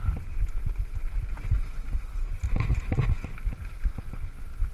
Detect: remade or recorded recorded